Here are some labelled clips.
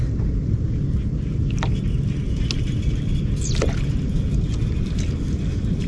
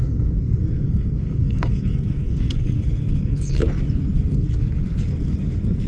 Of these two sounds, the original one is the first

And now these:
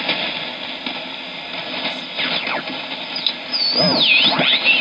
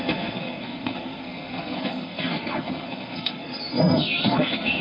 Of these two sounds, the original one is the first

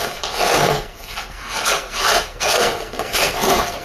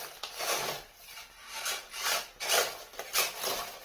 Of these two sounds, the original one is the second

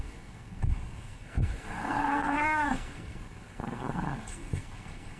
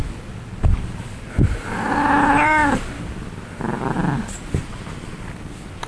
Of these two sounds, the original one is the second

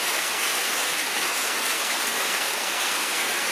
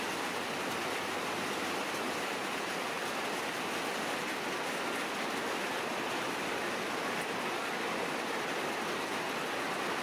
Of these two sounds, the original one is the second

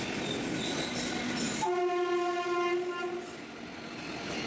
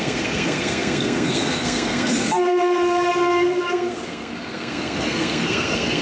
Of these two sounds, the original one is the first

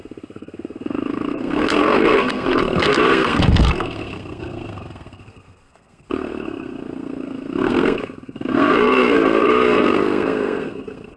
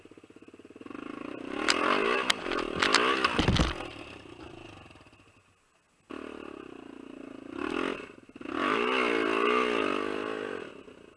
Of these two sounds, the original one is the second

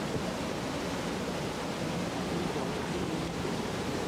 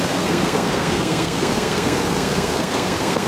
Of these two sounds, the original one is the first